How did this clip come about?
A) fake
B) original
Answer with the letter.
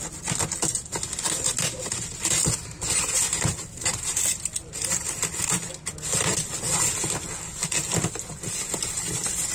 B